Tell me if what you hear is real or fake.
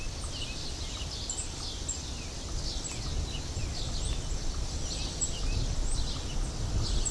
real